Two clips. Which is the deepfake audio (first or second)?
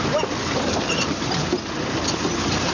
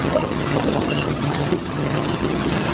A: second